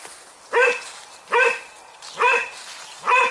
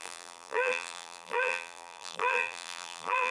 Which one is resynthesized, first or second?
second